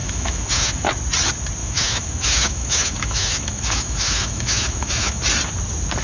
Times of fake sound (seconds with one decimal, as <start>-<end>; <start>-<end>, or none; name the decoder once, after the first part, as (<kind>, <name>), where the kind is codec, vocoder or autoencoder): 0.0-0.9 (autoencoder, DAC-VAE); 1.6-5.2